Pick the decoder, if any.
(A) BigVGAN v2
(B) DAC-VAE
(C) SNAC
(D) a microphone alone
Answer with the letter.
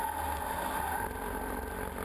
D